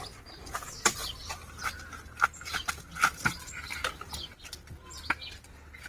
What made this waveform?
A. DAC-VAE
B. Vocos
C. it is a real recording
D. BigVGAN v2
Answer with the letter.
C